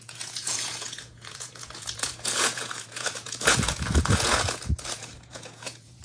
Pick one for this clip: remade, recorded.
remade